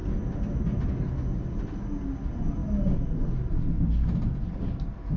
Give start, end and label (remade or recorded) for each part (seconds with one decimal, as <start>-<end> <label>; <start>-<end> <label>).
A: 0.0-5.2 recorded